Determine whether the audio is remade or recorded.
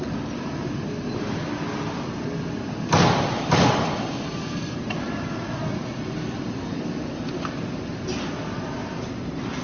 recorded